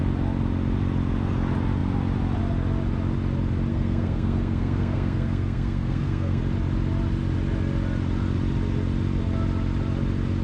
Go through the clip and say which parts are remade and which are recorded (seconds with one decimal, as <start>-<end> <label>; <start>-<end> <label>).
0.0-3.7 recorded; 3.7-6.4 remade; 6.4-10.4 recorded